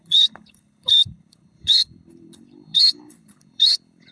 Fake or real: fake